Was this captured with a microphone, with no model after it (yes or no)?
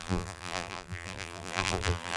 no